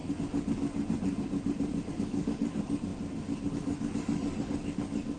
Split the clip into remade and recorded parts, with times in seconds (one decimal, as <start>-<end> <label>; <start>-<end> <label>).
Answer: 0.0-1.9 recorded; 1.9-2.9 remade; 2.9-3.5 recorded; 3.5-5.2 remade